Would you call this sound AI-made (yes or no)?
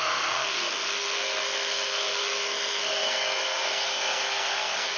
yes